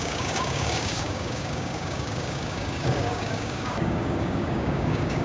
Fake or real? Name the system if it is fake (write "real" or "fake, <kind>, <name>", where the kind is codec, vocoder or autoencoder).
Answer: fake, codec, DAC